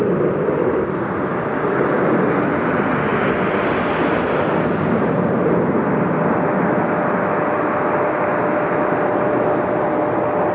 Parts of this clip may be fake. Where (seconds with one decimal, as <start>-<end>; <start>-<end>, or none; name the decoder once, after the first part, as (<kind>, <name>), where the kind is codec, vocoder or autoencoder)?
none